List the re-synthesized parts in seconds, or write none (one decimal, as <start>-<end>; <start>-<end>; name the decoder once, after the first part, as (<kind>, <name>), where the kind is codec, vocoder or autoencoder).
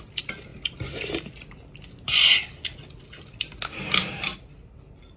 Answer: none